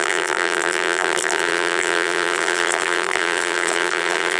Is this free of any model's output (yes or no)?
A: no